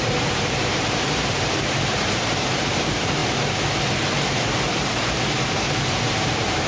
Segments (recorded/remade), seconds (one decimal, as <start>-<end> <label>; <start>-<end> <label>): 0.0-3.2 remade; 3.2-4.8 recorded; 4.8-6.7 remade